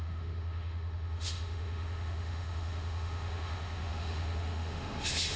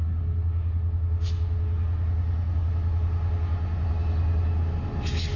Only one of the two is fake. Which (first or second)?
first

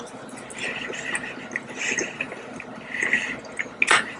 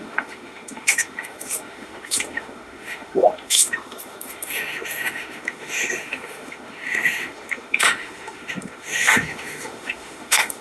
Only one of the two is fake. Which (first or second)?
second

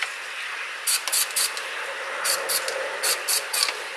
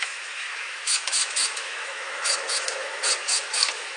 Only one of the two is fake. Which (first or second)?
second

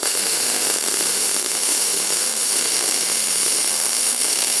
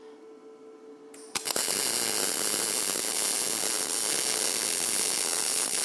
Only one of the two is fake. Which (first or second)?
first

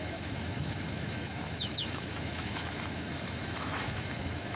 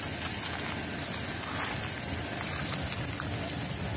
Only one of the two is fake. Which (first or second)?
first